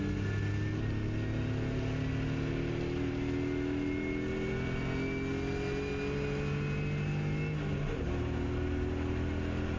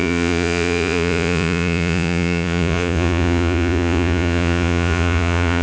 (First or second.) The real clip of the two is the first